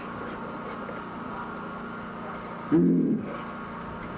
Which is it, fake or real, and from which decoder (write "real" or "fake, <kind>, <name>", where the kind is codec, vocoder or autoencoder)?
real